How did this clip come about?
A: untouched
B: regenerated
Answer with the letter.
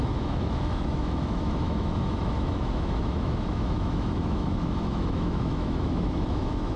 B